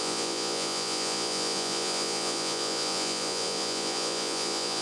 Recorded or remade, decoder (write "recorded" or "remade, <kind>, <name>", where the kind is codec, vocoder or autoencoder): remade, vocoder, Vocos